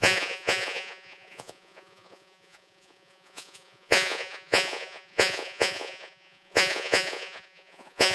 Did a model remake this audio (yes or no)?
yes